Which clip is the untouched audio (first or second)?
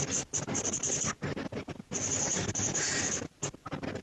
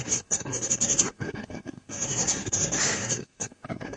first